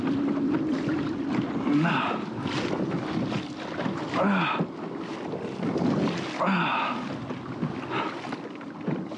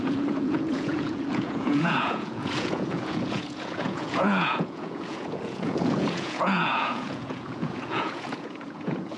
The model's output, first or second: second